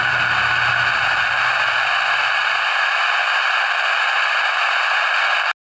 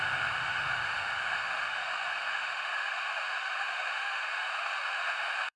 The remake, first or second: second